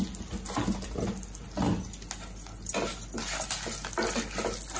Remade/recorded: recorded